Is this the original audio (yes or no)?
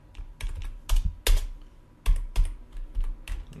yes